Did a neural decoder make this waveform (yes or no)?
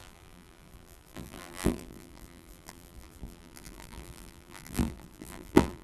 yes